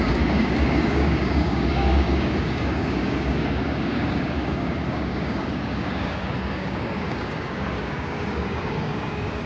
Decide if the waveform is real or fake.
fake